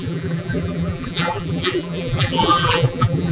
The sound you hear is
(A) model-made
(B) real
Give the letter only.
A